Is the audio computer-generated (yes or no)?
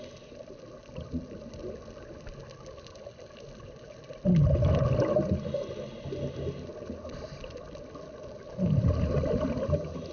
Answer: no